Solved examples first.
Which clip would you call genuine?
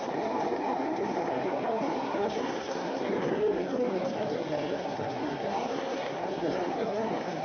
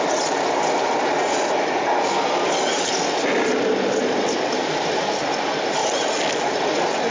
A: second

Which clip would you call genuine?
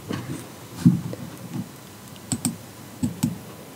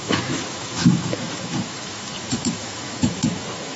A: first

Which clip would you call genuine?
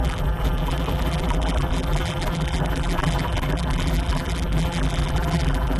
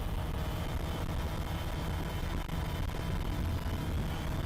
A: second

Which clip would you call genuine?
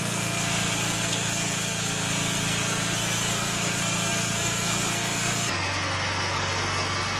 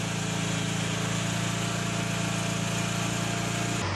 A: second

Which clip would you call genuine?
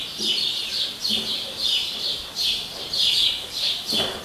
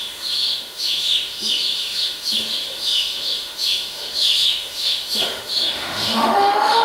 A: first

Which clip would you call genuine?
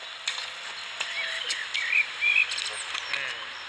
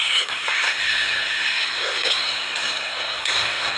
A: first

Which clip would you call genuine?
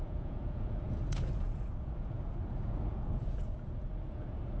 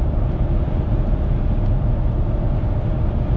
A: second